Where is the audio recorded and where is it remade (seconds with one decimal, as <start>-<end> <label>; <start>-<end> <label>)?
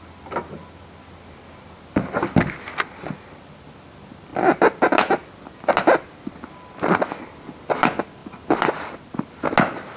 0.0-10.0 recorded